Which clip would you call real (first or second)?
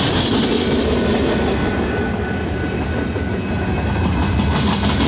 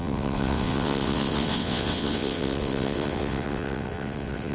first